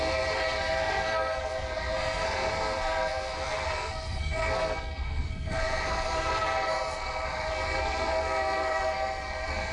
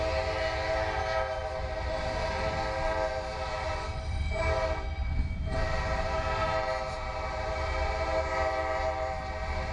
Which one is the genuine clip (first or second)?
second